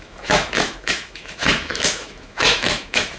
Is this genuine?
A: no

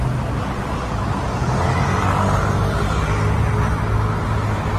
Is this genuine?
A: yes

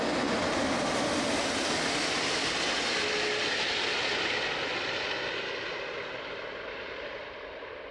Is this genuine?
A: yes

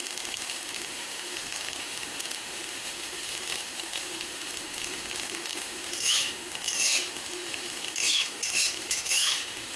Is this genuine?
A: no